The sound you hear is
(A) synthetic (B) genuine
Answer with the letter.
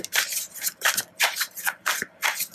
A